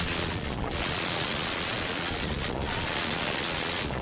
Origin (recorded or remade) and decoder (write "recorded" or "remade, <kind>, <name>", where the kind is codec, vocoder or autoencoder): remade, vocoder, Vocos